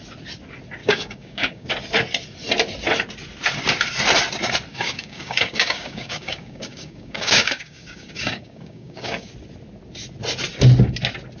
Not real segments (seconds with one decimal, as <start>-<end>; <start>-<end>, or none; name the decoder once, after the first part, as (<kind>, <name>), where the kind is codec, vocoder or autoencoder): 0.8-1.7 (codec, DAC); 4.7-9.3